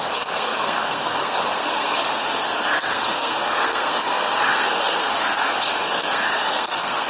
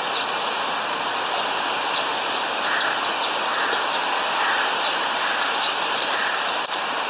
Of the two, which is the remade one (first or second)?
first